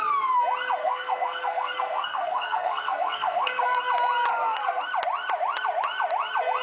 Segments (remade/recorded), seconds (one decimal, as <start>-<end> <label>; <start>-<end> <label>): 0.0-0.8 recorded; 0.8-3.8 remade; 3.8-4.3 recorded; 4.3-4.8 remade; 4.8-6.6 recorded